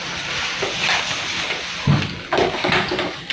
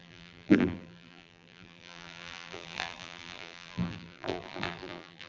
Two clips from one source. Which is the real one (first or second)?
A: first